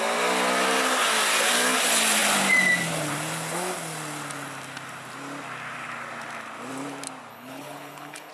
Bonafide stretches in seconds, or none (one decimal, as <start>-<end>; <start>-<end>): 0.0-7.3